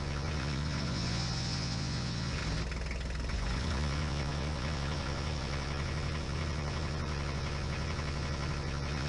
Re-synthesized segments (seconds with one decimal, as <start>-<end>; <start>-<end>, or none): 0.0-2.4; 3.3-9.1